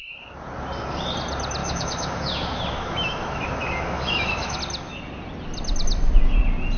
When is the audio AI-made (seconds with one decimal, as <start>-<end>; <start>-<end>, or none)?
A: 1.6-4.6